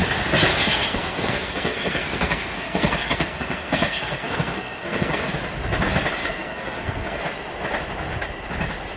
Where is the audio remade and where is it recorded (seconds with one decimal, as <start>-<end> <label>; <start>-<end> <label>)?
0.0-0.5 recorded; 0.5-5.3 remade; 5.3-6.2 recorded; 6.2-7.2 remade; 7.2-9.0 recorded